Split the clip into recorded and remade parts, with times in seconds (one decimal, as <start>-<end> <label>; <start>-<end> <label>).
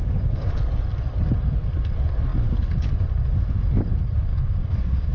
0.0-0.5 remade; 0.5-4.3 recorded; 4.3-5.1 remade